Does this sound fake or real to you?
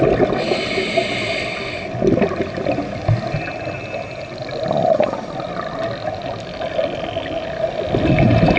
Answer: real